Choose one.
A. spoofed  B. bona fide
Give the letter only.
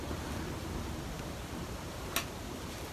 B